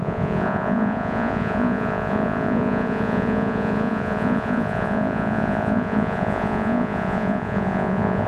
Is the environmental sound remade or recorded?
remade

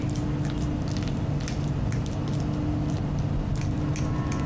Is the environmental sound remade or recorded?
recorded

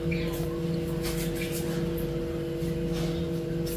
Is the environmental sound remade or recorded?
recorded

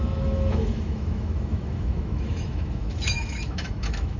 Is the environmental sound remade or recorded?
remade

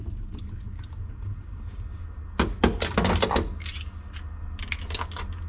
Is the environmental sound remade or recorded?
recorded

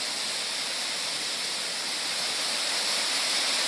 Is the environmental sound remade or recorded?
recorded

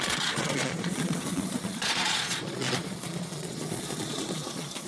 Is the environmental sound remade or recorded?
remade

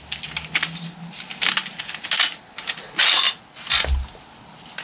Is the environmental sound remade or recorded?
recorded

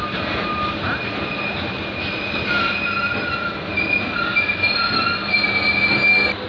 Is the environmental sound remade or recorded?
recorded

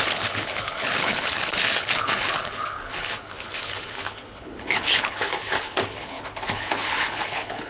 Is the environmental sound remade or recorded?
remade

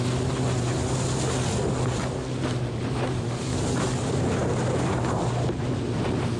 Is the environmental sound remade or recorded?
recorded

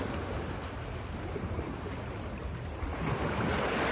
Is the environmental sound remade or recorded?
recorded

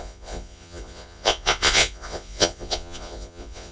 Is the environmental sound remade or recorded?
remade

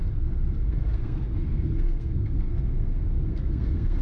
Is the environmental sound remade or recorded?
remade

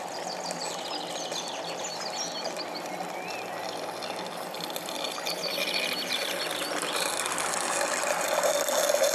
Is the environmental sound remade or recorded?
recorded